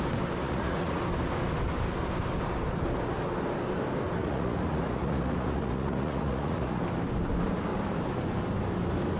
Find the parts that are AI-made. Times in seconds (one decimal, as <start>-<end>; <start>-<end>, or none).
0.4-1.0; 4.2-6.8